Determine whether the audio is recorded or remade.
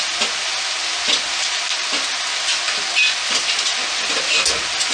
recorded